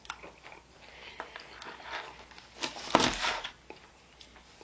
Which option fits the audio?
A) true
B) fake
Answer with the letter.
A